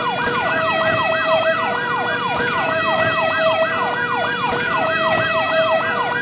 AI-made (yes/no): no